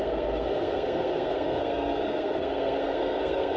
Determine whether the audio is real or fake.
fake